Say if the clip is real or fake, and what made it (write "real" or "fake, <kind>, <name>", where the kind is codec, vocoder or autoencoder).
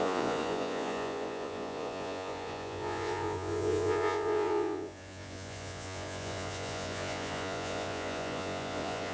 fake, vocoder, Vocos